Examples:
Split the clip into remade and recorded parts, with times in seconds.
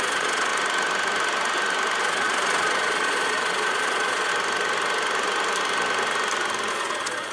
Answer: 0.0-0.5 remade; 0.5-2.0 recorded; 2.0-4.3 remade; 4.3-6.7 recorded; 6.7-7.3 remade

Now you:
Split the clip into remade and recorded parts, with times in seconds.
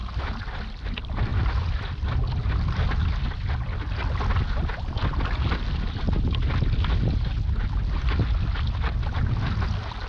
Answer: 0.0-10.1 recorded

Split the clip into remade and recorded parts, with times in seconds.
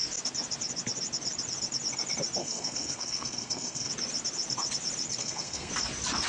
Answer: 0.0-2.4 recorded; 2.4-3.9 remade; 3.9-5.2 recorded; 5.2-5.7 remade; 5.7-6.3 recorded